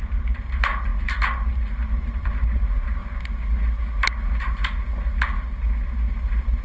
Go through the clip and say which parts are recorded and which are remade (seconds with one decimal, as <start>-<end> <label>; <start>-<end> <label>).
0.0-3.0 remade; 3.0-6.1 recorded; 6.1-6.6 remade